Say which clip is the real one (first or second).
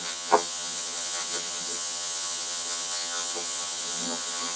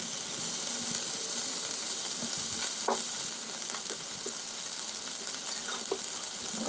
second